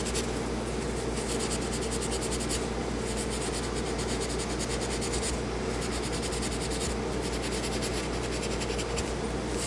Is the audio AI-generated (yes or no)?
no